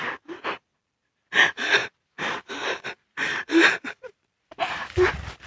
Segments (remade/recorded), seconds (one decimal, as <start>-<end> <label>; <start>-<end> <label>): 0.0-1.8 recorded; 1.8-5.1 remade; 5.1-5.5 recorded